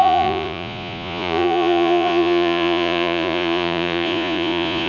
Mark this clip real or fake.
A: fake